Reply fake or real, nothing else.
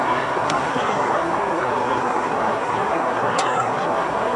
fake